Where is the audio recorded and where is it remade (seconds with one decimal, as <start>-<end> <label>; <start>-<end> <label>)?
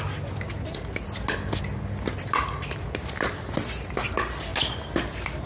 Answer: 0.0-5.5 recorded